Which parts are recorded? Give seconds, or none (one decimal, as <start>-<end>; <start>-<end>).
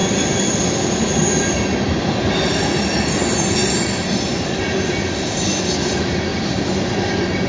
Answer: 0.0-7.5